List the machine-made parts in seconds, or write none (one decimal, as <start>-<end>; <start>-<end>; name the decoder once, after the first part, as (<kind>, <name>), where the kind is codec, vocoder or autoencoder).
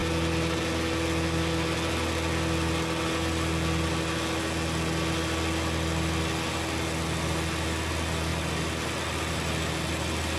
none